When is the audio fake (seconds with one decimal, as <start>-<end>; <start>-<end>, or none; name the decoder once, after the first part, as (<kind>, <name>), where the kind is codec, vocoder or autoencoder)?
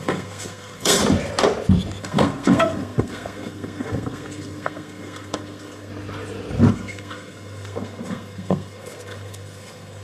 0.0-1.0 (codec, SNAC); 2.0-5.9; 6.7-10.0